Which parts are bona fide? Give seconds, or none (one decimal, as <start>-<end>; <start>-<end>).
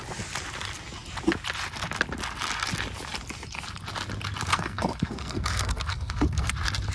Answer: 0.0-4.5; 6.5-6.9